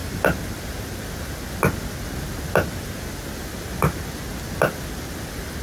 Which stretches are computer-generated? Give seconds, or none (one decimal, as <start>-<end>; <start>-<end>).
none